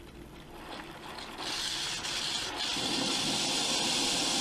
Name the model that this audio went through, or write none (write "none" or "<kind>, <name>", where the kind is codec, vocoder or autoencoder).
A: none